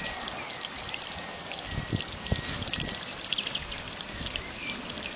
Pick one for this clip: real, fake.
real